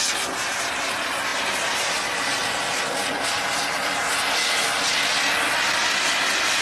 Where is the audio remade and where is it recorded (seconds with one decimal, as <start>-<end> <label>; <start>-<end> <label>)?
0.0-6.6 recorded